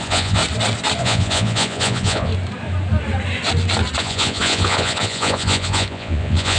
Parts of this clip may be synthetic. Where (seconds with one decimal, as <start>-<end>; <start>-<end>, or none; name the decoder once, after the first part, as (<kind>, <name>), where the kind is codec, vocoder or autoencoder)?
0.0-0.4 (vocoder, Vocos); 1.0-2.3; 4.0-6.6